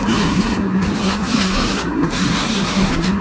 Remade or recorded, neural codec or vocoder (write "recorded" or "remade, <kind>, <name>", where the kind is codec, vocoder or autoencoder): remade, codec, SNAC